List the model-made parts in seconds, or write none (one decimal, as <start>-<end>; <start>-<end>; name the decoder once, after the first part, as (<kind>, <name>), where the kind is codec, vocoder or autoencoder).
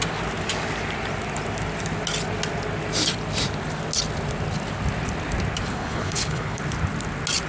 5.7-6.6 (codec, HILCodec)